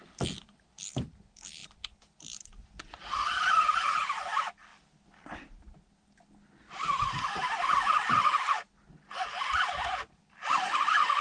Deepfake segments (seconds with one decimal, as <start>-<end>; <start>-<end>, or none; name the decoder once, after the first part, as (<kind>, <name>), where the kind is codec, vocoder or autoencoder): none

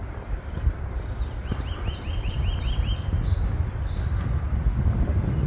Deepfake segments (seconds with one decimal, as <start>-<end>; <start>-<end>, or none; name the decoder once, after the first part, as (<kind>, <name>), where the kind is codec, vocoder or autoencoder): none

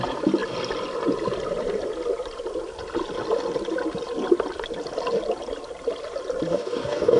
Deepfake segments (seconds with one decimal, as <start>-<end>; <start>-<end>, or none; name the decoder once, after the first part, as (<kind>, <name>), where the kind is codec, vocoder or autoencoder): 6.5-7.2 (codec, DAC)